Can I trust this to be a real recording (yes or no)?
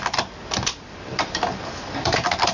yes